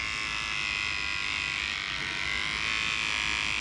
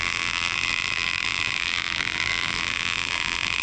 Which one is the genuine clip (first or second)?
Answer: first